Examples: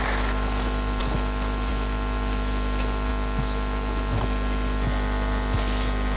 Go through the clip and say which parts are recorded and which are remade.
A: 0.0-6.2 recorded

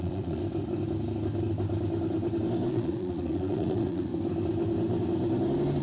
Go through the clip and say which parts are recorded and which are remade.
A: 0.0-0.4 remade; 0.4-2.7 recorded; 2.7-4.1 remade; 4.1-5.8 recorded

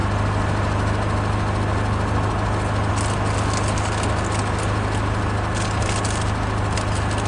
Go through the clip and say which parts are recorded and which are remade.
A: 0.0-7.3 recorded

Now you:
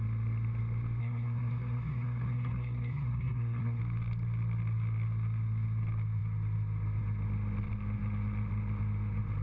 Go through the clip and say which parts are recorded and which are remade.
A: 0.0-1.0 recorded; 1.0-3.8 remade; 3.8-9.4 recorded